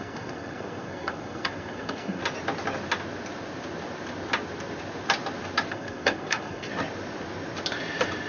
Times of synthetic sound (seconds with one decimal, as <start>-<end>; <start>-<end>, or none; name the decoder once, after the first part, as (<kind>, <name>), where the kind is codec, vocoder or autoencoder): 0.0-2.2 (codec, SNAC); 5.7-6.7